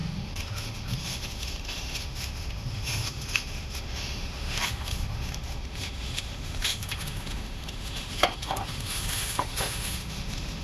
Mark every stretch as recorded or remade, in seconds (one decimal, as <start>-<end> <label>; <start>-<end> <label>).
0.0-10.6 remade